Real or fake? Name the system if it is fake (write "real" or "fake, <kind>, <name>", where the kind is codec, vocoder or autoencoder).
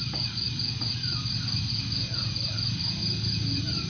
real